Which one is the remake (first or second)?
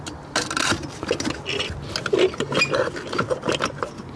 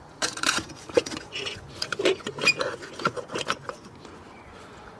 second